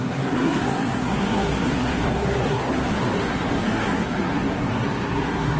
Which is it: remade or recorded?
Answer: remade